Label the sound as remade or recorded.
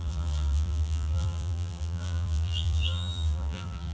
remade